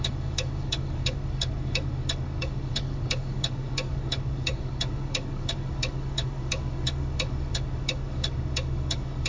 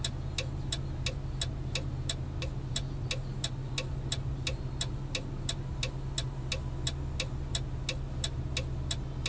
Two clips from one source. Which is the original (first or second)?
second